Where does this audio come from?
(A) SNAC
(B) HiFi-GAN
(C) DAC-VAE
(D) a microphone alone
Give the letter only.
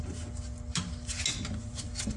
D